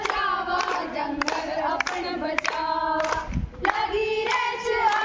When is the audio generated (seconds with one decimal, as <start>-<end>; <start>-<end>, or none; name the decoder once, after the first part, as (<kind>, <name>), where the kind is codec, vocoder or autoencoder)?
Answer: none